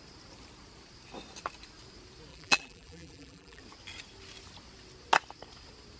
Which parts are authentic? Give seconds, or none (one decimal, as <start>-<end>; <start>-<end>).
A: 0.0-2.3; 3.6-6.0